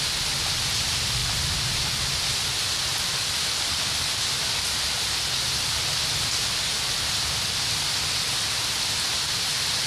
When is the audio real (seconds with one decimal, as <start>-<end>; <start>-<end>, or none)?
0.0-9.9